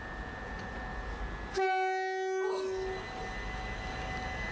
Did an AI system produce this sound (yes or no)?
no